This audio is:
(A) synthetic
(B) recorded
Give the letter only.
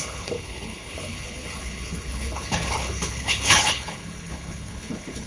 A